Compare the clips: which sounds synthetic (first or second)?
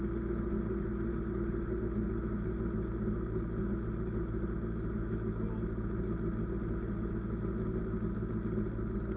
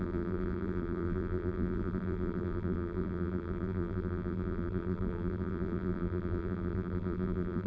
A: second